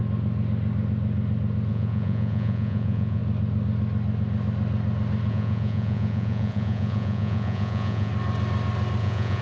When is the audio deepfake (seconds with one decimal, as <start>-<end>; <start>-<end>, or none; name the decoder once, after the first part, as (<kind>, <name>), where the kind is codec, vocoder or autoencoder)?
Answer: 1.7-3.2 (vocoder, Vocos); 5.3-8.1; 9.0-9.4